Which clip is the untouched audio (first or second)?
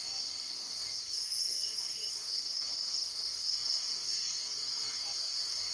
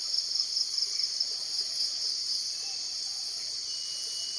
second